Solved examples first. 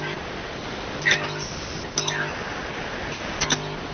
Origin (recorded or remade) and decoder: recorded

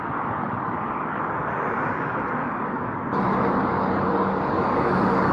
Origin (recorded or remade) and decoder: remade, codec, DAC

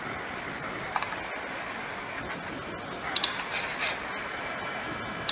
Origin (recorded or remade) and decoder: recorded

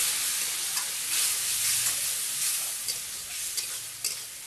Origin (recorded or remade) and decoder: recorded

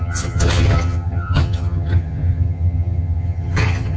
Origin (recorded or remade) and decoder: remade, vocoder, HiFi-GAN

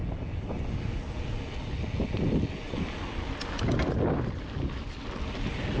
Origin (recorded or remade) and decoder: recorded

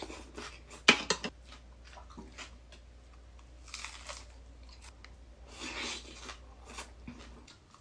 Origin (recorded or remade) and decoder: recorded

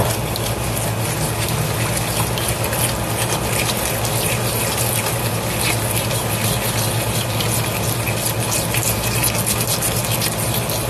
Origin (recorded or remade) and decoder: recorded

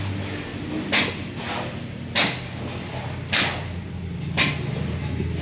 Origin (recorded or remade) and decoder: recorded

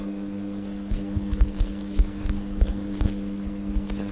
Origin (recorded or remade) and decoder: remade, codec, SNAC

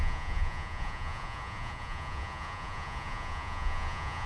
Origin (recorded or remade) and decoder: remade, vocoder, Vocos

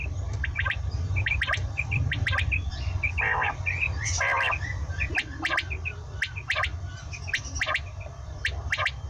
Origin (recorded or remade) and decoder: remade, vocoder, BigVGAN v2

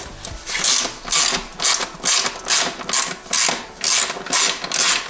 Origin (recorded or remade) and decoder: recorded